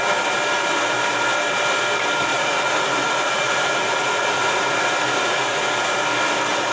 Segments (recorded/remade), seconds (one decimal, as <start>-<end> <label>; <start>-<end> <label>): 0.0-2.3 recorded; 2.3-5.6 remade; 5.6-6.7 recorded